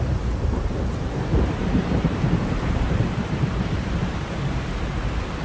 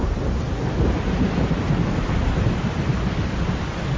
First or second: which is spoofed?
first